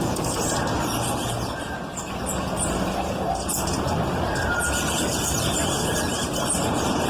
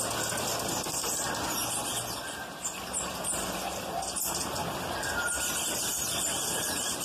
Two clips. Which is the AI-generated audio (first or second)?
second